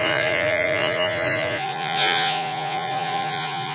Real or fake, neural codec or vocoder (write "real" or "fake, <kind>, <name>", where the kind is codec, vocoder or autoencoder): fake, vocoder, Vocos